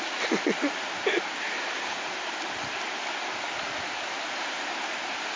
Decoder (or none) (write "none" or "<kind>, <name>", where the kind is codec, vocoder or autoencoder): none